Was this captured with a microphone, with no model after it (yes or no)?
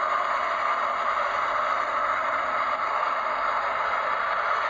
yes